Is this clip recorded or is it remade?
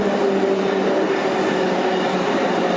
recorded